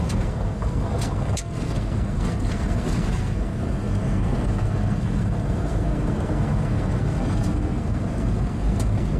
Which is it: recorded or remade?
remade